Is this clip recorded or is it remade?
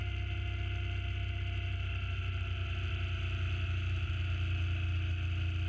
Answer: recorded